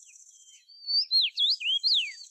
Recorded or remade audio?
remade